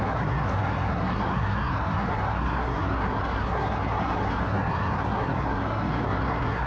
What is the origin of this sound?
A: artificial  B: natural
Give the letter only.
A